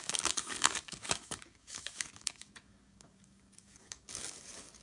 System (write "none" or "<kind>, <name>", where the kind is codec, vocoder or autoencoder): codec, DAC